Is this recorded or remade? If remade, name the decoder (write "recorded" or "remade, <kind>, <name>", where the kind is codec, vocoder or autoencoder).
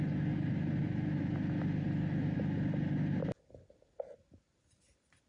recorded